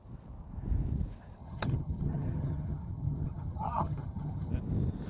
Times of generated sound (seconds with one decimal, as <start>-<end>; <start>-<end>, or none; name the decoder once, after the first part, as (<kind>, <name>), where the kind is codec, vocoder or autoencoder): 1.4-4.5 (vocoder, HiFi-GAN)